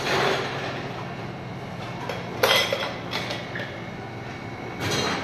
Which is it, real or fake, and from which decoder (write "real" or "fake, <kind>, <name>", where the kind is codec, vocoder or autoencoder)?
real